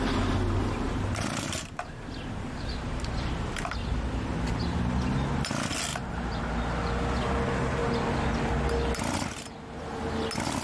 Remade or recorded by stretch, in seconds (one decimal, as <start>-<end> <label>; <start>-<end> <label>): 0.0-0.6 recorded; 0.6-3.6 remade; 3.6-5.9 recorded; 5.9-6.4 remade; 6.4-10.6 recorded